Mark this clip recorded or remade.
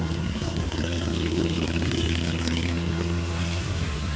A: remade